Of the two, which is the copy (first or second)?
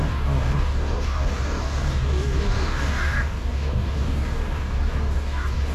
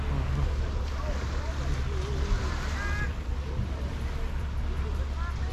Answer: first